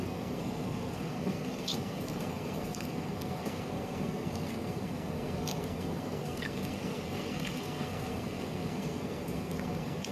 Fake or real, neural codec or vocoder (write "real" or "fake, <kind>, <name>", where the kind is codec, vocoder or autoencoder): fake, codec, SNAC